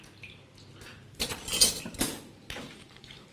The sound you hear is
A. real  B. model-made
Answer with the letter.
A